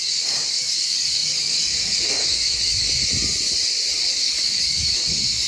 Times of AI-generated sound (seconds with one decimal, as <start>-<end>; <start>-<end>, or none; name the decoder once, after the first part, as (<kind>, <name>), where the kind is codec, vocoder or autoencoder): 0.0-3.0 (codec, DAC); 4.1-5.5